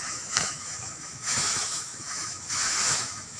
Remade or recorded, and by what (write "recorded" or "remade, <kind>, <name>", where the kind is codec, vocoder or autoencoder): remade, autoencoder, DAC-VAE